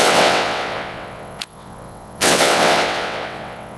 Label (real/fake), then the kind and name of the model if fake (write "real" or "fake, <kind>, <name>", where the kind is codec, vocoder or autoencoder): fake, vocoder, WaveNeXt